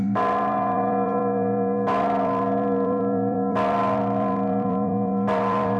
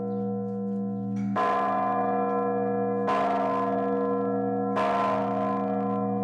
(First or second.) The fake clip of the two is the first